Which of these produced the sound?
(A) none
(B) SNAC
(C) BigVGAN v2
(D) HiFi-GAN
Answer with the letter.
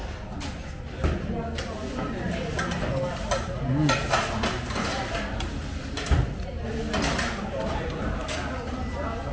A